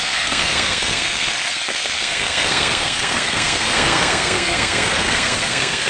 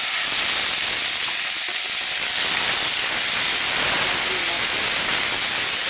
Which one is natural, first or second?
second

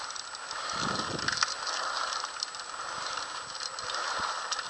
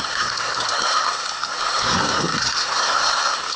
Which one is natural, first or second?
first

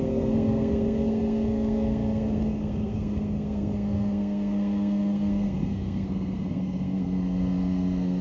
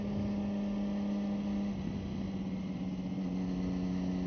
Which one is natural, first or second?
second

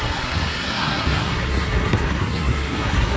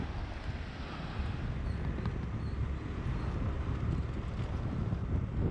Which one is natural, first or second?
second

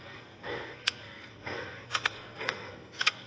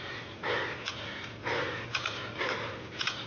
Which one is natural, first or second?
second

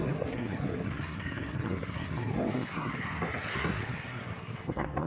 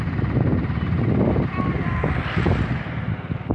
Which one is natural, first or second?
second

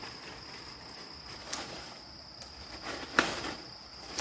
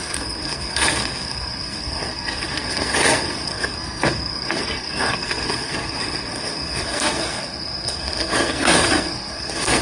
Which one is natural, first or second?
first